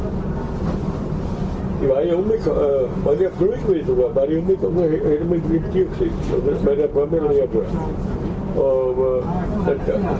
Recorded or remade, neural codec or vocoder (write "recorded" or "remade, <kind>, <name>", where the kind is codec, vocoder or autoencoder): recorded